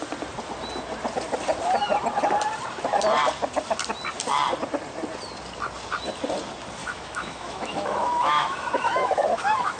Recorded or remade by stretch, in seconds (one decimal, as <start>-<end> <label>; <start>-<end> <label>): 0.0-6.8 recorded; 6.8-9.8 remade